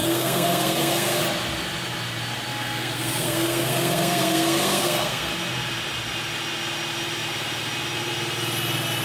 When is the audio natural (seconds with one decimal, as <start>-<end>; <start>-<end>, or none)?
1.2-2.5; 5.3-9.0